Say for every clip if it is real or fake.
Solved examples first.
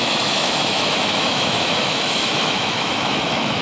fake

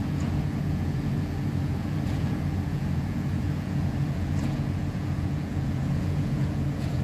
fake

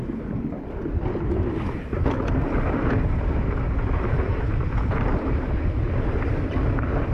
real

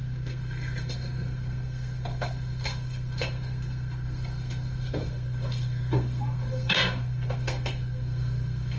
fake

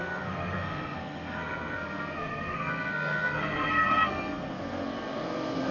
fake